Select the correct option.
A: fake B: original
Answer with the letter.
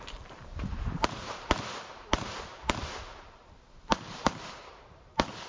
A